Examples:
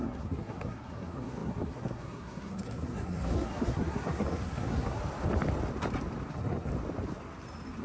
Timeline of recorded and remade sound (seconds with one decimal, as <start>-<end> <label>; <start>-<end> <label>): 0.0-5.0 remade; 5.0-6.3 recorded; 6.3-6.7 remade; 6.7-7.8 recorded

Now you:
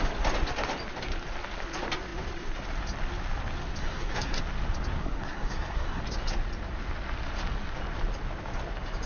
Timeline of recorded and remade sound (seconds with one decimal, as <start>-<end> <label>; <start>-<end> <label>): 0.0-3.8 recorded; 3.8-4.4 remade; 4.4-5.0 recorded; 5.0-6.0 remade; 6.0-9.1 recorded

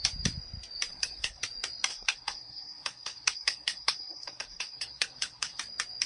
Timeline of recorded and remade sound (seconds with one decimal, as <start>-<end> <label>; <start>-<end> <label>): 0.0-0.9 recorded; 0.9-1.4 remade; 1.4-1.9 recorded; 1.9-5.6 remade; 5.6-6.1 recorded

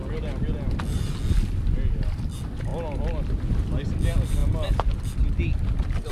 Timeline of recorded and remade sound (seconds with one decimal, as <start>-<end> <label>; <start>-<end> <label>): 0.0-6.1 recorded